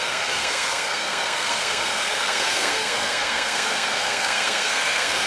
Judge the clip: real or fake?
fake